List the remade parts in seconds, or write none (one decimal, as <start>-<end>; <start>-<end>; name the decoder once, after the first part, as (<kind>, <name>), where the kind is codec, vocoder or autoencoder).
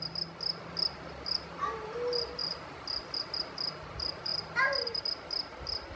none